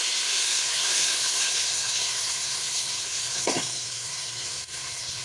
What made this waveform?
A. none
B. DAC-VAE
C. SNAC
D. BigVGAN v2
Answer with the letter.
C